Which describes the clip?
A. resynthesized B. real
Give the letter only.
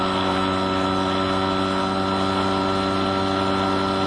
B